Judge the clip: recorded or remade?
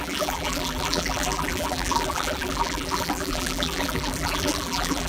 remade